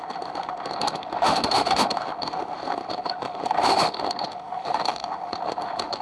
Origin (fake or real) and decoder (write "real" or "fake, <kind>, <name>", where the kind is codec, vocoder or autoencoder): fake, autoencoder, DAC-VAE